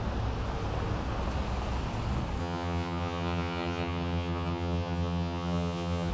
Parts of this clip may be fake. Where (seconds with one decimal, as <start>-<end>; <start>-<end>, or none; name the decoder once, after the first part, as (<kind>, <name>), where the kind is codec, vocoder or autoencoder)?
2.4-6.1 (vocoder, HiFi-GAN)